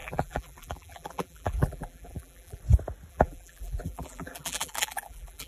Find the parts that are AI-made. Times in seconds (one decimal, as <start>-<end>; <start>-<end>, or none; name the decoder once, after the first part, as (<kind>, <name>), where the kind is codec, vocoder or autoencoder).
0.0-2.6 (vocoder, BigVGAN v2); 3.1-5.5